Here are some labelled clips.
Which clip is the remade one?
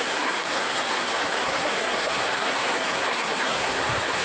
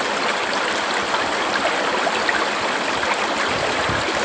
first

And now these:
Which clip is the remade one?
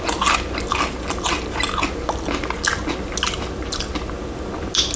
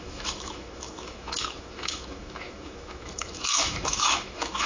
second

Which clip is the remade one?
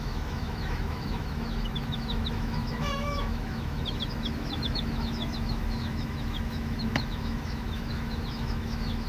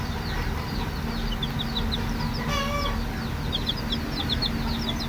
first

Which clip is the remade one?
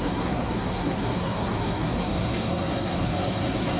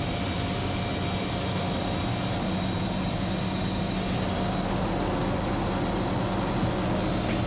first